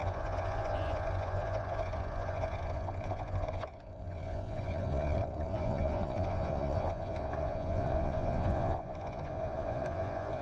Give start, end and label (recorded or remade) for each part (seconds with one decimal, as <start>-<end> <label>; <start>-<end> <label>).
0.0-10.4 remade